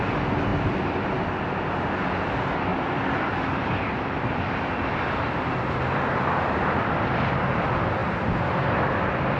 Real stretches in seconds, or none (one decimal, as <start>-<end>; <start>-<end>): 0.0-2.7; 7.4-9.4